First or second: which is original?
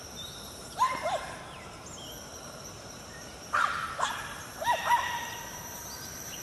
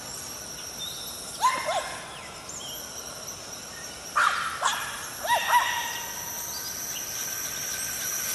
second